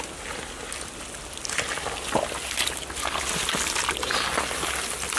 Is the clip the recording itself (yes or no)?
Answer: yes